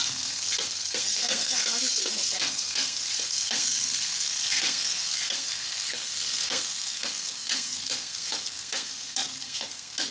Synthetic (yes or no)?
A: yes